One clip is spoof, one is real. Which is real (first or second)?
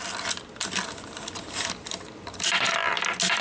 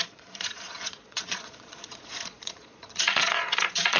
first